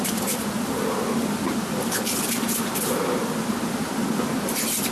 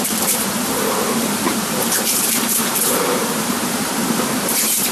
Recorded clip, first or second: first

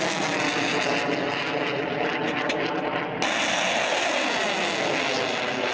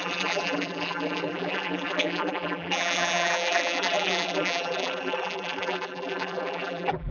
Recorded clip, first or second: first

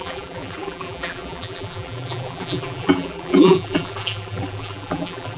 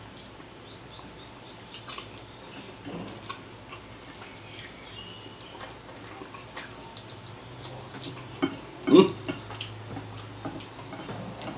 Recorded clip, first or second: second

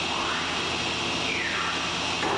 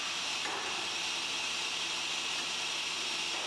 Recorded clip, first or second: first